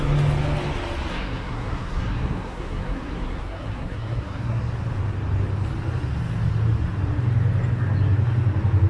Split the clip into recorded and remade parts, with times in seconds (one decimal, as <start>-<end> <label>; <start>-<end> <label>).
0.0-1.1 recorded; 1.1-4.6 remade; 4.6-8.9 recorded